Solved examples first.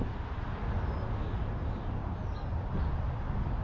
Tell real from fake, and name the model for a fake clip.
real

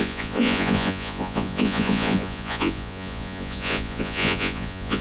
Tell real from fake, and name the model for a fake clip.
fake, vocoder, Vocos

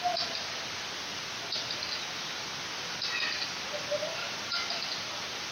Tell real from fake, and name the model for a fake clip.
real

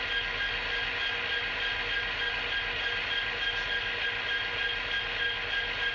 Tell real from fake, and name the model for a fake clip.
real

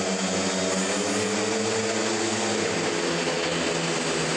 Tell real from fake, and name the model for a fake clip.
real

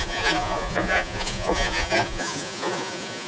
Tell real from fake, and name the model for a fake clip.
fake, vocoder, Vocos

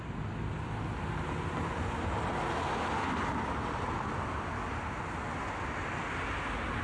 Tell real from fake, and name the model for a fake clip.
real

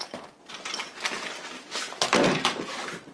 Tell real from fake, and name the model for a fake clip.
real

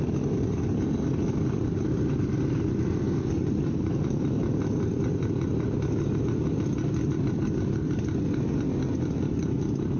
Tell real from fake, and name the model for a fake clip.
real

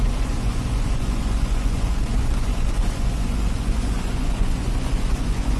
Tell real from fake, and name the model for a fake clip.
fake, vocoder, Vocos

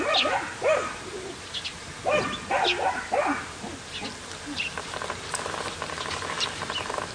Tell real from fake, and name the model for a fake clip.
real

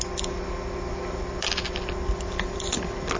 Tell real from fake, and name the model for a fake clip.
real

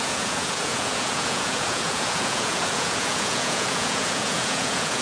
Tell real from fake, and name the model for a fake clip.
fake, vocoder, Vocos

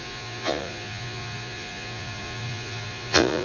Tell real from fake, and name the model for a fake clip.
fake, vocoder, Vocos